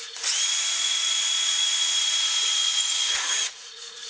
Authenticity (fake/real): fake